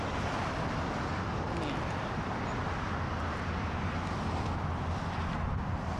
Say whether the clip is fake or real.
real